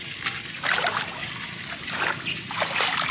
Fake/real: real